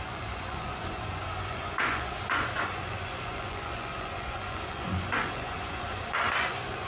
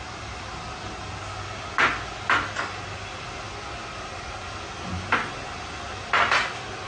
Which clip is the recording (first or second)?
second